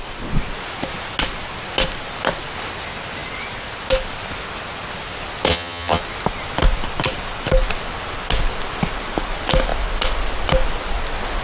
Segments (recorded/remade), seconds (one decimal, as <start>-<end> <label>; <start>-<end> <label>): 0.0-5.5 recorded; 5.5-6.0 remade; 6.0-11.4 recorded